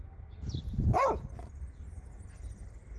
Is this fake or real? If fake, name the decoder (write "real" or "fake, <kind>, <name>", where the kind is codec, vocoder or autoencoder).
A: real